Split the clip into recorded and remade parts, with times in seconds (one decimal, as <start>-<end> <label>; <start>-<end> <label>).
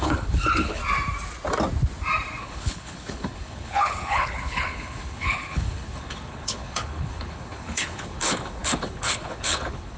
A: 0.0-0.8 remade; 0.8-2.4 recorded; 2.4-10.0 remade